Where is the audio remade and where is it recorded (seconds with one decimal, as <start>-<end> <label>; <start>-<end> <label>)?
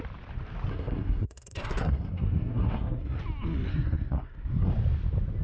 0.0-0.7 recorded; 0.7-3.2 remade; 3.2-3.7 recorded; 3.7-4.7 remade; 4.7-5.4 recorded